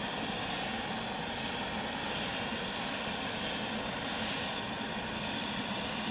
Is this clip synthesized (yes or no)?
yes